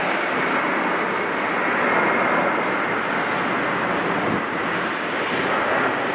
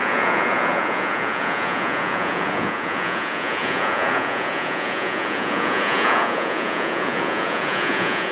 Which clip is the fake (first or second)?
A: second